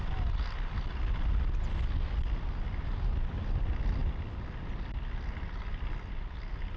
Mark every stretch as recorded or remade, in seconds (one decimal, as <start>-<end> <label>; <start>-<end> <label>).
0.0-6.8 recorded